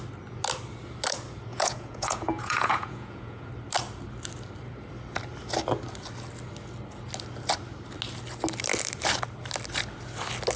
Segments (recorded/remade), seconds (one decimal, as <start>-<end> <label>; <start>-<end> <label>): 0.0-1.5 recorded; 1.5-3.5 remade; 3.5-10.6 recorded